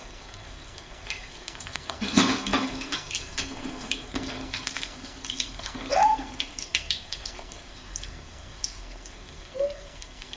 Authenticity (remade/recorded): remade